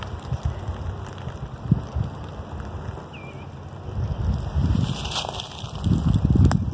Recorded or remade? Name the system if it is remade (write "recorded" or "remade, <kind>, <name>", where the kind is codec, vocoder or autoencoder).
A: recorded